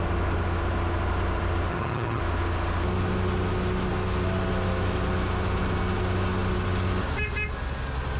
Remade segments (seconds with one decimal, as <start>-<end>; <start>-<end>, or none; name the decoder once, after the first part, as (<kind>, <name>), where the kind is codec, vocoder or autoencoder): 1.7-2.2 (vocoder, HiFi-GAN)